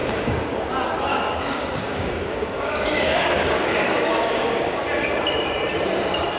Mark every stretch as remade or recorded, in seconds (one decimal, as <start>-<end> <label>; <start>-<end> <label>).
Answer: 0.0-0.7 remade; 0.7-1.1 recorded; 1.1-4.8 remade; 4.8-6.4 recorded